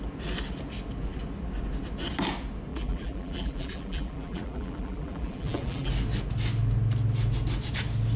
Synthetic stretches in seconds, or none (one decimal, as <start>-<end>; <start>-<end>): 2.7-5.9